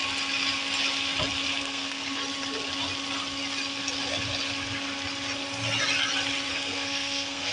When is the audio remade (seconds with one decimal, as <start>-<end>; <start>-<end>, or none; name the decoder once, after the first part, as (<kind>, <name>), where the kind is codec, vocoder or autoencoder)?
1.6-2.2 (codec, SNAC); 6.5-7.5